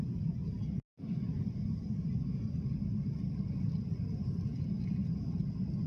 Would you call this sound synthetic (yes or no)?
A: no